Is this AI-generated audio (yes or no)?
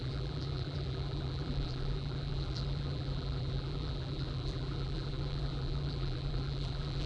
yes